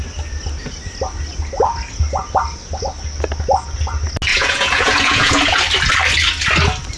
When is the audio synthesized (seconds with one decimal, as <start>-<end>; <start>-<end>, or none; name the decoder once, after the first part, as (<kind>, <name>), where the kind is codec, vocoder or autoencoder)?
4.3-5.6 (vocoder, Vocos)